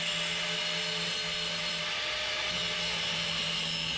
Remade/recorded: recorded